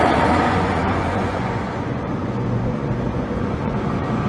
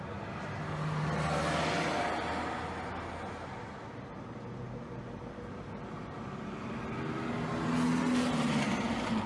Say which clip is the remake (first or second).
first